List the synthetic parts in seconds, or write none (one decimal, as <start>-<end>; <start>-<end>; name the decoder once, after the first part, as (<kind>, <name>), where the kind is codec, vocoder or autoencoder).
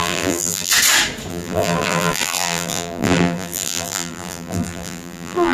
0.0-0.7 (vocoder, BigVGAN v2); 1.3-5.5